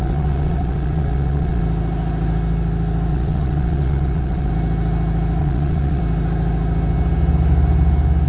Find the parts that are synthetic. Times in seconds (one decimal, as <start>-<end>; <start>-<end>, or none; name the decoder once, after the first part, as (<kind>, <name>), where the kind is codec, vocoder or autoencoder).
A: 0.0-1.6 (vocoder, WaveNeXt); 3.1-4.5; 5.4-6.0